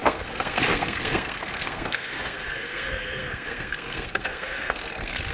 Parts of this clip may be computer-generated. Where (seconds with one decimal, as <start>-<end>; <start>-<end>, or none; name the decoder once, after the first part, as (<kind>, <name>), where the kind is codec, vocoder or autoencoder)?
0.0-5.3 (codec, SNAC)